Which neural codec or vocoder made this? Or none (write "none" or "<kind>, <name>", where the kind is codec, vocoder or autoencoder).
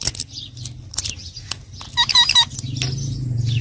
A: none